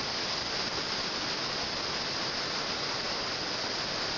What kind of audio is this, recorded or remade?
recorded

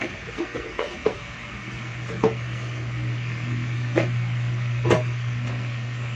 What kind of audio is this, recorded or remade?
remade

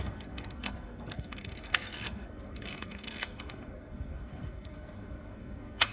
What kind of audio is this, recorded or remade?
remade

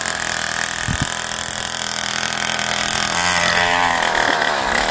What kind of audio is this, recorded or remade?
recorded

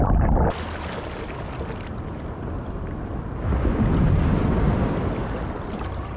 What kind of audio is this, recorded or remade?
recorded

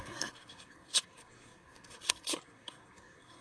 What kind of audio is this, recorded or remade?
remade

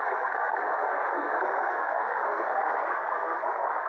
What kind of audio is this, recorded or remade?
remade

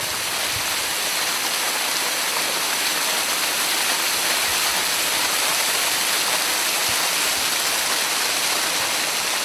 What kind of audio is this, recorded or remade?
recorded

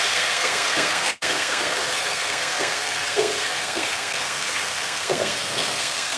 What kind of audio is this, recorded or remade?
remade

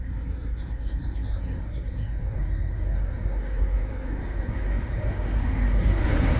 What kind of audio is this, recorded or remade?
remade